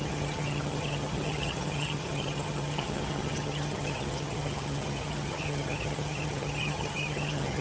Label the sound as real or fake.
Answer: fake